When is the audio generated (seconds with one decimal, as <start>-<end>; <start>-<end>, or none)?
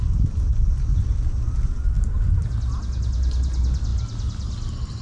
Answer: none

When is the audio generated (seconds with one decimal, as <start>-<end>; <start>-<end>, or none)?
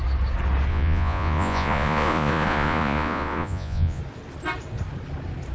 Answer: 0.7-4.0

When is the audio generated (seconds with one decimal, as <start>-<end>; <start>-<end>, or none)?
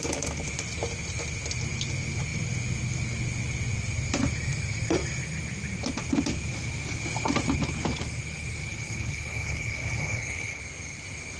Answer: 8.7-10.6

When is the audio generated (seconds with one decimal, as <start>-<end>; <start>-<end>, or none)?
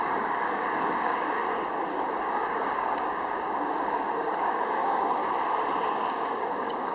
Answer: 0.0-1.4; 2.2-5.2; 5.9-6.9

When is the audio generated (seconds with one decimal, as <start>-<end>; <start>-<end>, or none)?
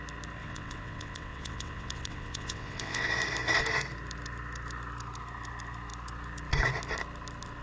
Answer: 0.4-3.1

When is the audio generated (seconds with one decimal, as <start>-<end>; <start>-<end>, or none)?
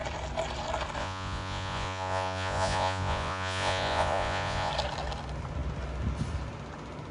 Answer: 1.0-4.7